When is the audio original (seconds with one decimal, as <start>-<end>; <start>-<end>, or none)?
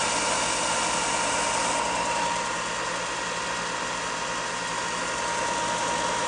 0.0-1.6; 5.4-6.3